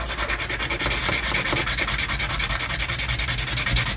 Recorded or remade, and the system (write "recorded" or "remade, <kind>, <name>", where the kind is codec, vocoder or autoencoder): recorded